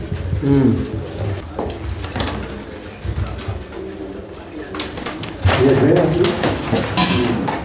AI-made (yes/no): no